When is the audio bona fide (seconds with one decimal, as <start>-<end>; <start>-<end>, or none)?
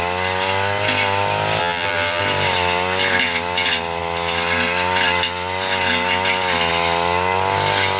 0.0-1.6; 2.2-8.0